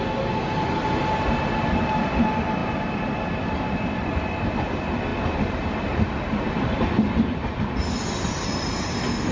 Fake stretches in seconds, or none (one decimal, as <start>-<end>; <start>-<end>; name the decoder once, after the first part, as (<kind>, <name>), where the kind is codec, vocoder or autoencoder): none